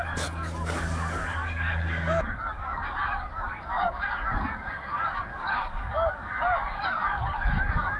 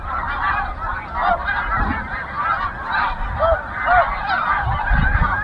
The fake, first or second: first